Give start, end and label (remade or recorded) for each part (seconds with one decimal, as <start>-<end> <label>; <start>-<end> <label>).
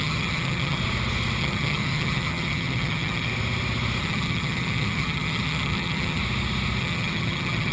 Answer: 0.0-0.8 remade; 0.8-1.4 recorded; 1.4-3.3 remade; 3.3-4.0 recorded; 4.0-6.2 remade; 6.2-6.8 recorded; 6.8-7.7 remade